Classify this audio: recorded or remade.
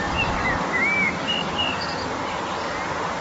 recorded